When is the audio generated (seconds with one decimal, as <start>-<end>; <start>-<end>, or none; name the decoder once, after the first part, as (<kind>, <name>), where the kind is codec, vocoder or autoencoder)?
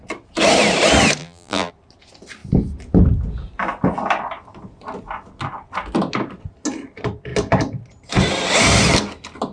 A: 1.2-1.7 (vocoder, BigVGAN v2)